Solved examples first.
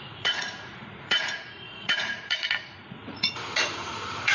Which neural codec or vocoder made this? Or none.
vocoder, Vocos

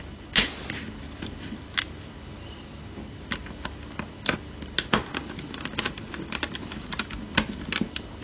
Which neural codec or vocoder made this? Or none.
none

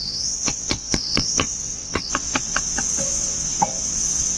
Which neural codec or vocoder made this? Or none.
vocoder, WaveNeXt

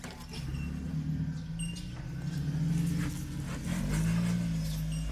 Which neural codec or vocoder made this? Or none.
none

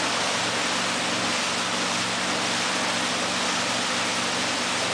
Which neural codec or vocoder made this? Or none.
none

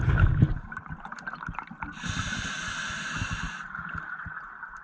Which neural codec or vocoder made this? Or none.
none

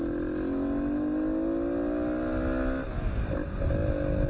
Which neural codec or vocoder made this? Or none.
none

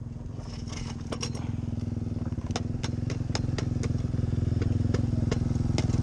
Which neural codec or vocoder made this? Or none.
none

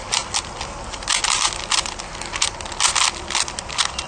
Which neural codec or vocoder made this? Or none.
none